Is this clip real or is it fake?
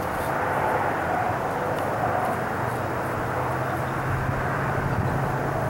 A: real